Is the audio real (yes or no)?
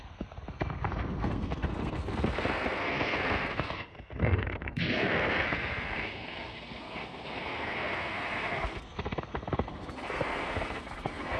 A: no